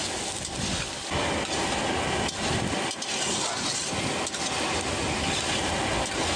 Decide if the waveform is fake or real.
real